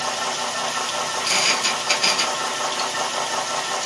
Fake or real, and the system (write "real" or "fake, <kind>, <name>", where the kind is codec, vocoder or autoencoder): real